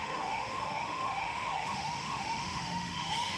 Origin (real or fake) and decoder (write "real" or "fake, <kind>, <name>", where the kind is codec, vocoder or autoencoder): fake, autoencoder, DAC-VAE